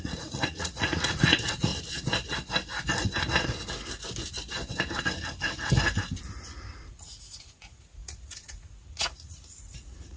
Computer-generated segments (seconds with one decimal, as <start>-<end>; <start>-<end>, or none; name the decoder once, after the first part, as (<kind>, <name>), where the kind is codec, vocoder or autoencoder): 0.0-1.7 (vocoder, Vocos); 6.9-10.2